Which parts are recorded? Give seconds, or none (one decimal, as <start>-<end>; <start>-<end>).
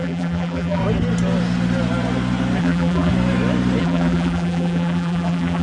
0.8-2.6; 3.1-3.8